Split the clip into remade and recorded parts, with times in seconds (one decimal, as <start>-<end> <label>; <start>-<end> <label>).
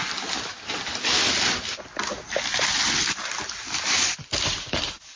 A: 0.0-1.2 recorded; 1.2-3.8 remade; 3.8-5.2 recorded